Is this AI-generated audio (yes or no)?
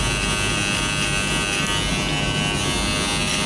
no